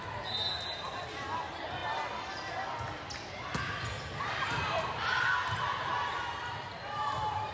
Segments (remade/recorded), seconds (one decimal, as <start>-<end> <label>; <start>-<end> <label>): 0.0-7.5 recorded